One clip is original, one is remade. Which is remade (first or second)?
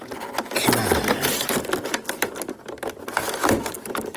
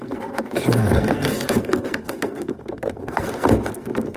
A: second